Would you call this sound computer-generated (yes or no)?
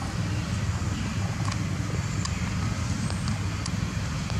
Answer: no